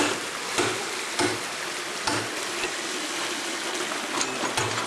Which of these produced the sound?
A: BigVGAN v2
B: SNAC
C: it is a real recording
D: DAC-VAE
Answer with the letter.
C